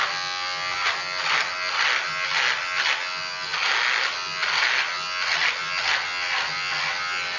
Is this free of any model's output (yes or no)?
yes